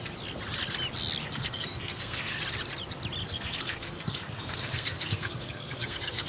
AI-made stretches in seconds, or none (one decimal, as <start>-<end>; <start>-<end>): 1.2-2.4; 3.2-6.3